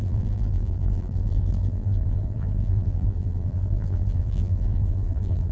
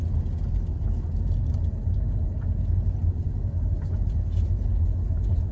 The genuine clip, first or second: second